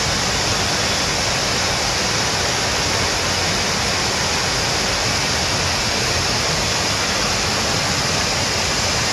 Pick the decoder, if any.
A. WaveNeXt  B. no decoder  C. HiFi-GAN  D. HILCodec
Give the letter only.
B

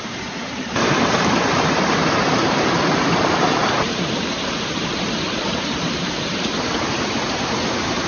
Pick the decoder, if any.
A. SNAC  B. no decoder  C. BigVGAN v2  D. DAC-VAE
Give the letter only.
C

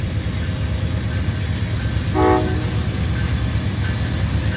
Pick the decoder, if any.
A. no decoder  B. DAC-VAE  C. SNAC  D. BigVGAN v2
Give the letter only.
A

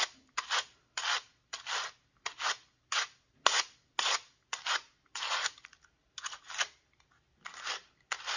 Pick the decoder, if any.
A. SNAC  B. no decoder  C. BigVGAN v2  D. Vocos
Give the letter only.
B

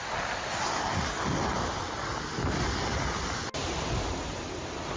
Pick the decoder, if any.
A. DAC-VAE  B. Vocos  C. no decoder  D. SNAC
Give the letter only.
C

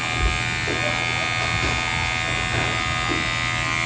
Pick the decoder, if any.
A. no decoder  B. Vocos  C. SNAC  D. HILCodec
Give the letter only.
A